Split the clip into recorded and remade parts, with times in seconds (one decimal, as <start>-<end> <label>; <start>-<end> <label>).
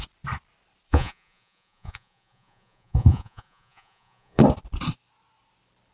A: 0.0-0.9 recorded; 0.9-4.4 remade; 4.4-5.9 recorded